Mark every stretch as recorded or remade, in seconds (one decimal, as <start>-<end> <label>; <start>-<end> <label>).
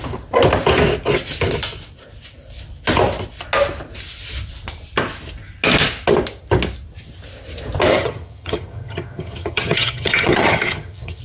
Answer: 0.0-7.9 recorded; 7.9-11.2 remade